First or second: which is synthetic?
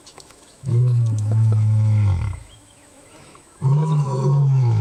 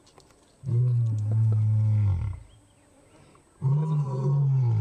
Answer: first